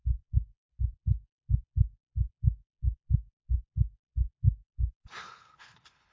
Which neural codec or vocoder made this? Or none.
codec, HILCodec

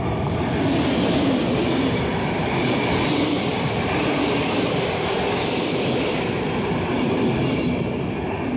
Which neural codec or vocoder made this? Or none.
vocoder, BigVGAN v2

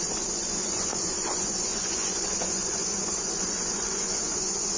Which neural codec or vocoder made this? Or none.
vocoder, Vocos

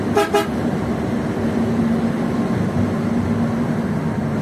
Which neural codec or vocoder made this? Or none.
none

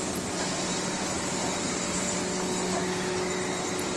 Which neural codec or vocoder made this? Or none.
none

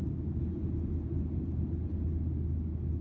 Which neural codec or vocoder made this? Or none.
none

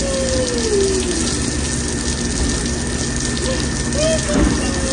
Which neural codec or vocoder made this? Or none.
none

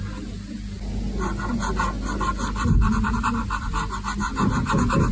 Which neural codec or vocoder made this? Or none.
none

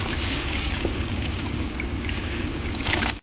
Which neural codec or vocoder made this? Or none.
codec, DAC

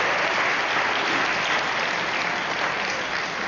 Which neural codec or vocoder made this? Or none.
none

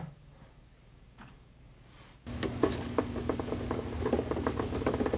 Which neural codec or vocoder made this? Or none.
codec, DAC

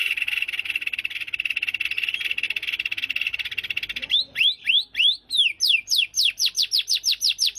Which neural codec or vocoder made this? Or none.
none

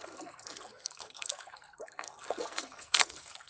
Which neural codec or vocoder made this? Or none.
codec, SNAC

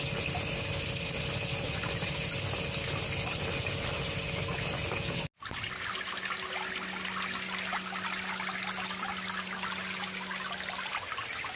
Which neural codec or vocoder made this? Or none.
none